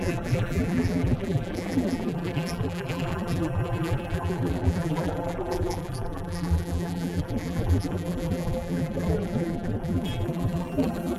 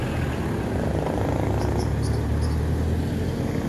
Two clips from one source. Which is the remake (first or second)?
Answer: first